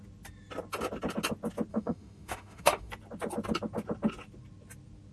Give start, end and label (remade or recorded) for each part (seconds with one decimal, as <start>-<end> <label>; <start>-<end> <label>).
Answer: 0.0-1.7 recorded; 1.7-2.9 remade; 2.9-5.1 recorded